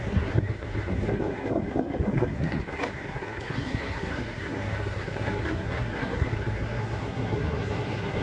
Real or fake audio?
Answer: fake